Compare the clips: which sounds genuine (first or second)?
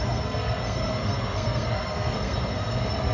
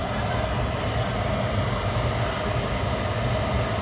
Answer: second